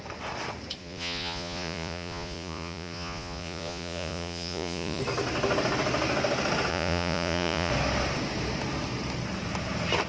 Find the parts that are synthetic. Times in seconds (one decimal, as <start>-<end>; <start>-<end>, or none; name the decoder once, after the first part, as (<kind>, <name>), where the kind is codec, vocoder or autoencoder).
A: 0.8-5.0 (vocoder, Vocos); 6.7-7.7